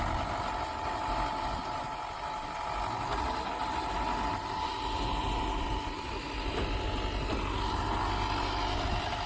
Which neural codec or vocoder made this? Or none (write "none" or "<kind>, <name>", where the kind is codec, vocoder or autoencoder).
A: none